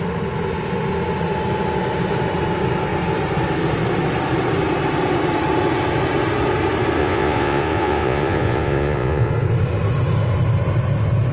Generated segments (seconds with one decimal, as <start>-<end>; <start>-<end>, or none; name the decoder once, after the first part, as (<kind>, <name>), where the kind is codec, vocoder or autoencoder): 7.0-9.3 (vocoder, Vocos)